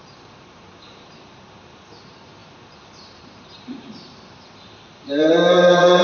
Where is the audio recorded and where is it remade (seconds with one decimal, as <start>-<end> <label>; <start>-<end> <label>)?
0.0-6.0 remade